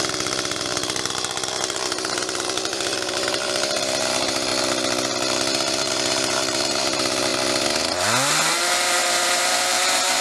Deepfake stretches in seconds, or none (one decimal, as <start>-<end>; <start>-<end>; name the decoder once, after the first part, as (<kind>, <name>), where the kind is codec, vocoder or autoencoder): 0.0-4.5 (vocoder, BigVGAN v2); 5.6-7.3; 8.5-10.2

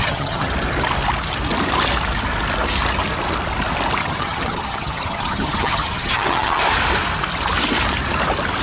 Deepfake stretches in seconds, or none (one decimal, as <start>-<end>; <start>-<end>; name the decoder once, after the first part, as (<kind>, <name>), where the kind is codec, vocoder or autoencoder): 0.0-0.5 (vocoder, HiFi-GAN); 4.0-6.6

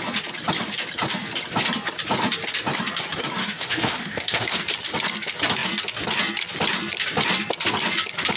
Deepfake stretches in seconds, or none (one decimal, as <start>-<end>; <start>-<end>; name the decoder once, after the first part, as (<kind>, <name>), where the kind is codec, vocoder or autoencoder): 3.4-4.6 (autoencoder, DAC-VAE)

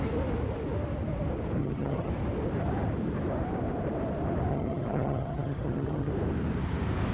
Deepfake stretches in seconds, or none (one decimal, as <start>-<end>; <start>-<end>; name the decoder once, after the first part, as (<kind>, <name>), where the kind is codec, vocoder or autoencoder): 1.6-2.1 (vocoder, HiFi-GAN); 4.5-6.1

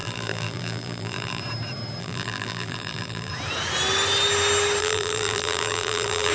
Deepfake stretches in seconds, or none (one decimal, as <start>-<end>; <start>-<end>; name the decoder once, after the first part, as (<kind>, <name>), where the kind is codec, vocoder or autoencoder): 0.0-1.4 (vocoder, BigVGAN v2); 2.0-3.3; 4.8-6.3

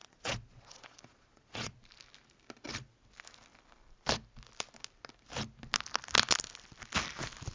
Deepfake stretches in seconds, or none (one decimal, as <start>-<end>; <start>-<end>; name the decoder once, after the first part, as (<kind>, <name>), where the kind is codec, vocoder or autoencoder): 0.0-1.8 (vocoder, Vocos)

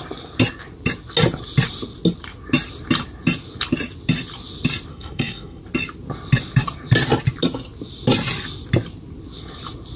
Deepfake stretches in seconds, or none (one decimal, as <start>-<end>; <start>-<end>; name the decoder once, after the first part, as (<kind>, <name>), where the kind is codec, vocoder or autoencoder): 4.9-5.6 (codec, SNAC)

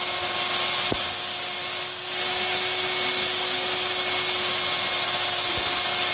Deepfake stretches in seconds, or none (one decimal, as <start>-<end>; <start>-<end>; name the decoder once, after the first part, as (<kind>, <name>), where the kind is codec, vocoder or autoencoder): none